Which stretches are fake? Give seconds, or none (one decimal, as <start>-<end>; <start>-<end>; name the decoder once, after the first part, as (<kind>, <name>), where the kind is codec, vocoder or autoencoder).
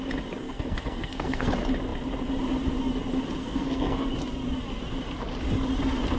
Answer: 0.4-1.5 (codec, SNAC); 3.4-4.1